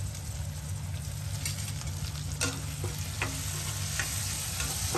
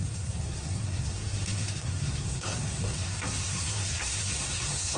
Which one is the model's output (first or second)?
second